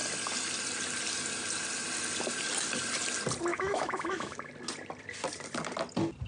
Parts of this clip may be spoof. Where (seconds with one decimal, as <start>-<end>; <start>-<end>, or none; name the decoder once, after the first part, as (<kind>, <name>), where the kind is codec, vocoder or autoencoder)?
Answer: 3.5-4.5 (autoencoder, DAC-VAE)